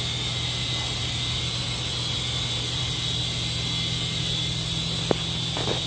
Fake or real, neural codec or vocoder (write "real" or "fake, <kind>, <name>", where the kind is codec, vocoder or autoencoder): real